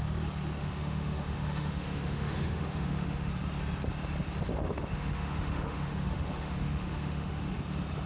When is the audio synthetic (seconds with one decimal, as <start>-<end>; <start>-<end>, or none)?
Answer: 0.6-3.3; 4.5-7.5